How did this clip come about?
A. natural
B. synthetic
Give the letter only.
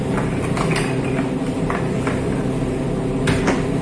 A